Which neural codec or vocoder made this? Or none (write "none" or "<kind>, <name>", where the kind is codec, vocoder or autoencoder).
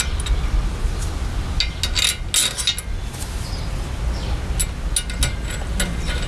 none